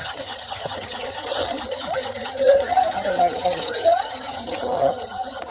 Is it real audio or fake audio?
fake